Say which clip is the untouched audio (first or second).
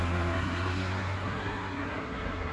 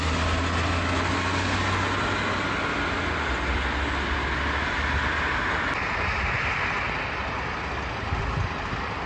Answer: second